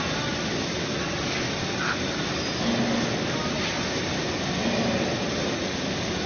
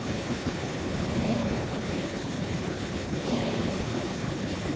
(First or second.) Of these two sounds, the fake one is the second